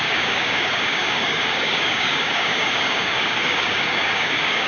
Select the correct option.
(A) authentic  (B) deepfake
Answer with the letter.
B